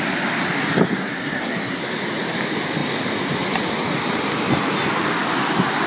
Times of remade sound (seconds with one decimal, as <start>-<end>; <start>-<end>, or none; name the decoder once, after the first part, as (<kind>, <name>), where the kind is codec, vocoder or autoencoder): 1.0-1.8 (codec, SNAC)

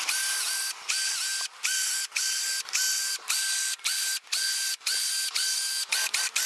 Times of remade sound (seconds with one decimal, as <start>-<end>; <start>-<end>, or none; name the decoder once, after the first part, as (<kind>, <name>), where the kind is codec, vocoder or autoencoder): none

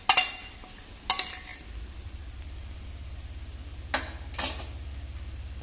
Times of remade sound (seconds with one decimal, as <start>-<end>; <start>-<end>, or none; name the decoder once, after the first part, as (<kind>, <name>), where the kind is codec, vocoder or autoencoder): none

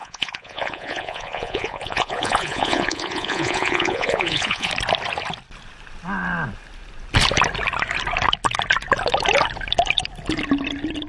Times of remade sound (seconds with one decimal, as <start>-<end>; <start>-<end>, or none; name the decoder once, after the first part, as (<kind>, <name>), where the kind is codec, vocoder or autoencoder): 0.0-4.7 (vocoder, Vocos)

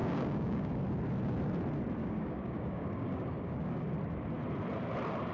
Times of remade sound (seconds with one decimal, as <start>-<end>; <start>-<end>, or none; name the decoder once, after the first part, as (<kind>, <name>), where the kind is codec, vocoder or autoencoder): 0.0-0.7 (codec, DAC); 2.0-3.8

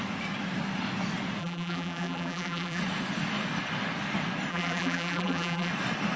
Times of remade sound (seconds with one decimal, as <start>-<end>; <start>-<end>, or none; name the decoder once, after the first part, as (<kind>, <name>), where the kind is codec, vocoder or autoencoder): 1.4-2.8 (vocoder, BigVGAN v2); 4.5-5.7

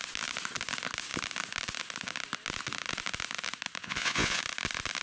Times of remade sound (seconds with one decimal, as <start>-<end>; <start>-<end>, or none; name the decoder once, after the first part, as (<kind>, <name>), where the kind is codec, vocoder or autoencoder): 3.8-4.4 (vocoder, Vocos)